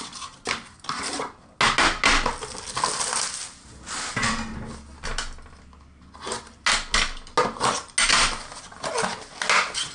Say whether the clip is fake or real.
real